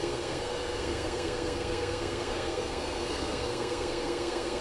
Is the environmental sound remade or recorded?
remade